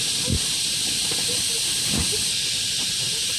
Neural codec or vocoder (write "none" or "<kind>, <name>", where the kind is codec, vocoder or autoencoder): none